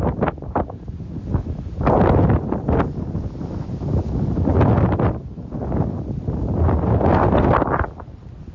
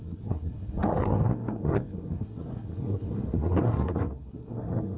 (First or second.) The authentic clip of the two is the first